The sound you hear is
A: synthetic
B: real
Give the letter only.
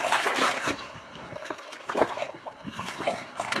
A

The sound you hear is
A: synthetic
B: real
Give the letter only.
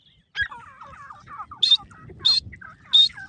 B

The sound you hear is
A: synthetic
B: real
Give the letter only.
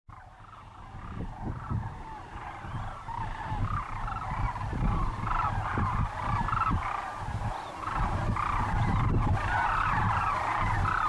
B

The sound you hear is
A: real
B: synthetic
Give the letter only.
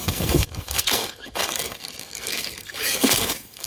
B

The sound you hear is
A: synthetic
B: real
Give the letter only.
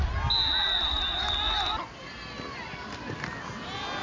B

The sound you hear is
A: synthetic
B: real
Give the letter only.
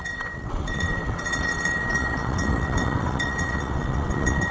A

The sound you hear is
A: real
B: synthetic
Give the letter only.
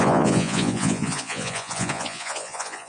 B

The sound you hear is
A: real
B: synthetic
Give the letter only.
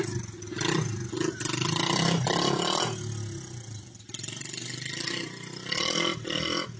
A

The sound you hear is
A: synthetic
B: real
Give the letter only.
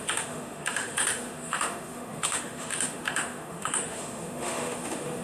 A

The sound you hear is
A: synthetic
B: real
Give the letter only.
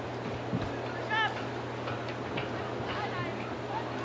B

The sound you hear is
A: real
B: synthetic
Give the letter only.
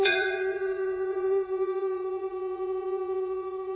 B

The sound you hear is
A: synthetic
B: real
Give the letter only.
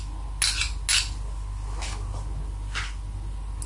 B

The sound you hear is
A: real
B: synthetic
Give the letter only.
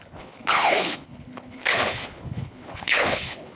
B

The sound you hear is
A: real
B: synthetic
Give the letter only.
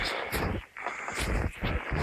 A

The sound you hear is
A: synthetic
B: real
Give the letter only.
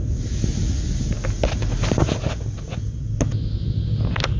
B